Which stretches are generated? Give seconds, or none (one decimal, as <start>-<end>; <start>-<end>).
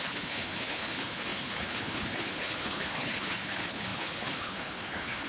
0.0-5.3